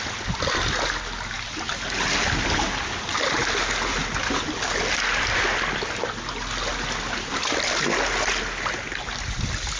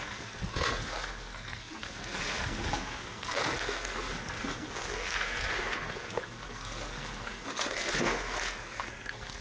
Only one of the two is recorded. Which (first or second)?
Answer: first